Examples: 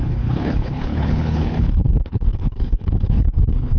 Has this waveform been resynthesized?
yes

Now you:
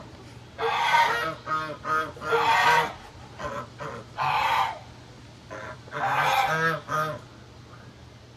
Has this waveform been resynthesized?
no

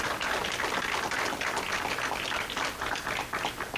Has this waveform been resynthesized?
no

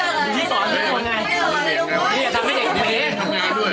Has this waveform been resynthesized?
yes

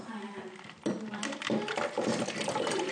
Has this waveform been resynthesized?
yes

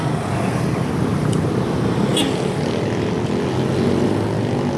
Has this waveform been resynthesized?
no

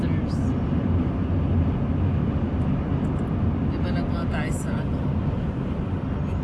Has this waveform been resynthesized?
no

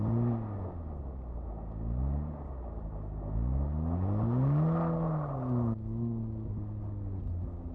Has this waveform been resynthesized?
no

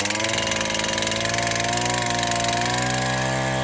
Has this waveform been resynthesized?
no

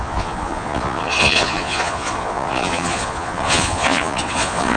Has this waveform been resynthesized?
yes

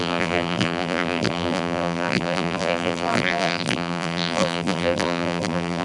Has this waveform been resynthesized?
yes